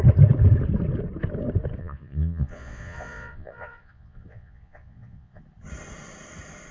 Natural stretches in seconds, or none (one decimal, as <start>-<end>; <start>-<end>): 0.0-1.8; 5.4-6.7